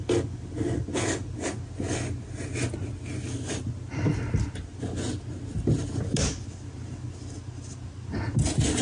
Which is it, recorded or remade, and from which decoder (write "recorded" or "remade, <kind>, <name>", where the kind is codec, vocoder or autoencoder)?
recorded